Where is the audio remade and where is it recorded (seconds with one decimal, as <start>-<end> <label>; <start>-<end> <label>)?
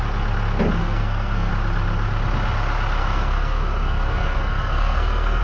0.0-0.8 recorded; 0.8-1.5 remade; 1.5-3.0 recorded; 3.0-5.4 remade